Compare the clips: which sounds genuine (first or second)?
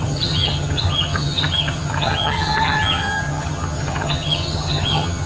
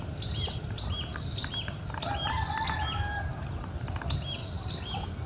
second